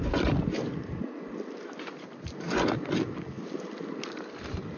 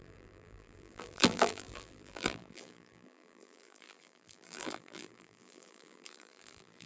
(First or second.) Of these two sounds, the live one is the first